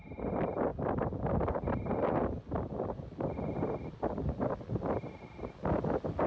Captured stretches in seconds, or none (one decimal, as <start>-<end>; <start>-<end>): 0.0-6.3

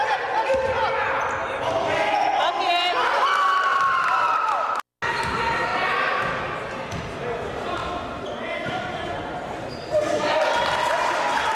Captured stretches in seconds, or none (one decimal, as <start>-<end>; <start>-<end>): 0.0-11.5

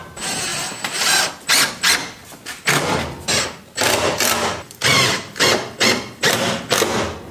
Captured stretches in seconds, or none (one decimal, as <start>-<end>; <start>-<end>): 0.0-0.5; 1.7-2.2; 6.6-7.3